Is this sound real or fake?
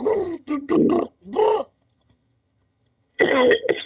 fake